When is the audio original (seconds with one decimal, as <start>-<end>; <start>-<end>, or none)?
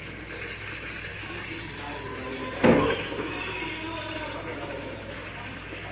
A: 0.0-1.1; 1.6-2.4; 3.6-4.5